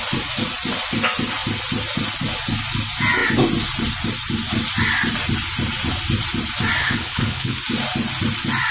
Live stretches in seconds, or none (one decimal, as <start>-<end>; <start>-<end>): 0.0-6.8; 7.6-8.7